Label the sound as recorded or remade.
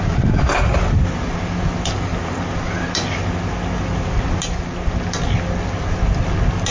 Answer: recorded